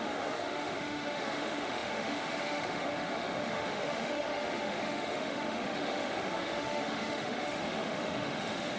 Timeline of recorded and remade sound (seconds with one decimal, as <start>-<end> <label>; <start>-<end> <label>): 0.0-8.8 remade